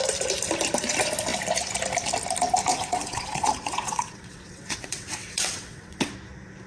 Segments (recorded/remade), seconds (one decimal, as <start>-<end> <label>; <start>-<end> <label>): 0.0-2.7 recorded; 2.7-6.1 remade; 6.1-6.7 recorded